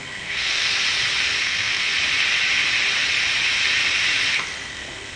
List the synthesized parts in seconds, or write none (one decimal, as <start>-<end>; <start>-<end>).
0.0-0.7; 1.4-1.9; 4.7-5.2